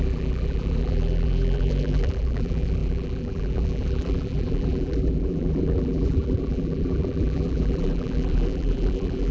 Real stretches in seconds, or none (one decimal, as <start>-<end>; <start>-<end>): none